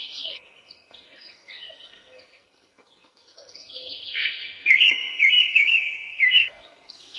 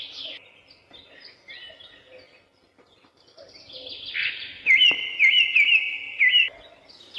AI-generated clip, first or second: first